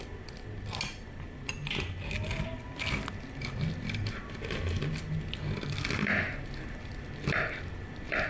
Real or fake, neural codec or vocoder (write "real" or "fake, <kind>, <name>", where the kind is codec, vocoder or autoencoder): real